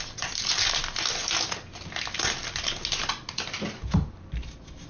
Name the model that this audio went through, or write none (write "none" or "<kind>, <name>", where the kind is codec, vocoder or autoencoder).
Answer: none